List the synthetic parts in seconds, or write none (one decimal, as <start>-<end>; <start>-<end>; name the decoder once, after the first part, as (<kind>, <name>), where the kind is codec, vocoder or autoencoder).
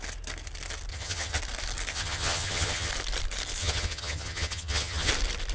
0.9-1.4 (vocoder, HiFi-GAN); 1.9-2.9; 3.6-5.1